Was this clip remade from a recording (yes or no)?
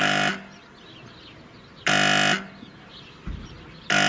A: no